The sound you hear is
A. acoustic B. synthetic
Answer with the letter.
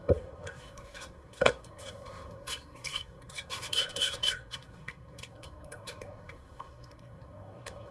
B